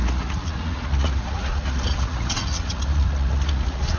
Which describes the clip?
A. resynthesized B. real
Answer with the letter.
A